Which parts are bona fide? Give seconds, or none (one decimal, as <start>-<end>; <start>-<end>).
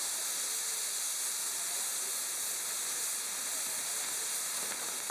0.0-5.1